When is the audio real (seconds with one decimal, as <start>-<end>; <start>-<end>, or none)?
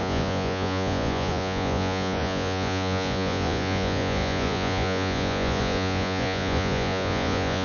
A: none